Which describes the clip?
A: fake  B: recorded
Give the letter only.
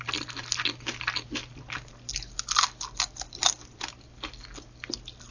B